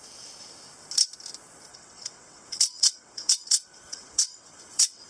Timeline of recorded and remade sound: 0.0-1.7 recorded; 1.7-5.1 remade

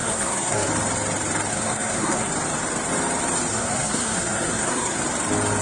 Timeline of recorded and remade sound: 0.0-0.7 remade; 0.7-1.5 recorded; 1.5-2.3 remade; 2.3-3.5 recorded; 3.5-5.0 remade; 5.0-5.6 recorded

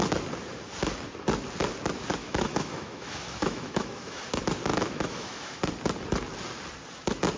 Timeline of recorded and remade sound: 0.0-2.2 recorded; 2.2-4.3 remade; 4.3-4.7 recorded; 4.7-5.6 remade; 5.6-7.4 recorded

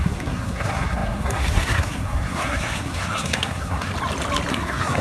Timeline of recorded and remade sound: 0.0-3.9 remade; 3.9-4.5 recorded; 4.5-5.0 remade

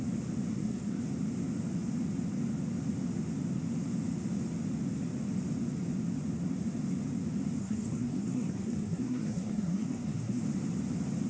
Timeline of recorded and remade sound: 0.0-0.5 recorded; 0.5-1.0 remade; 1.0-7.6 recorded; 7.6-10.4 remade; 10.4-11.3 recorded

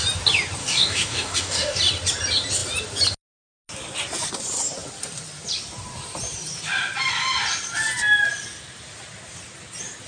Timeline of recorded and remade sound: 0.0-0.6 recorded; 0.6-1.8 remade; 1.8-10.1 recorded

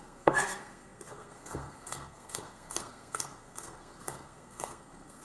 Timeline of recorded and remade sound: 0.0-5.2 remade

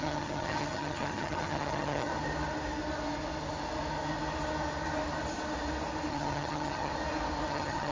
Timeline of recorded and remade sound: 0.0-2.1 remade; 2.1-6.1 recorded; 6.1-6.9 remade; 6.9-7.5 recorded; 7.5-7.9 remade